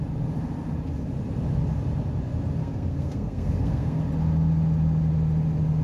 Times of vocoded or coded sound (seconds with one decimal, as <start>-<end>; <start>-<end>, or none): 2.6-4.0